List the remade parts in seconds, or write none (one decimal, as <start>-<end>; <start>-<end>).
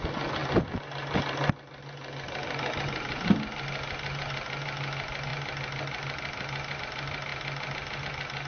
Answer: none